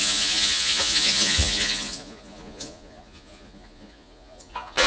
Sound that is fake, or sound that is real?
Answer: fake